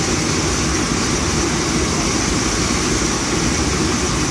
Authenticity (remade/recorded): recorded